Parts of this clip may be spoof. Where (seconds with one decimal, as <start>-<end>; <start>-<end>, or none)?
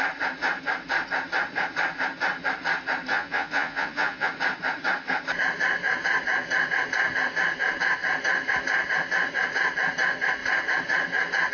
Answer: 3.1-4.3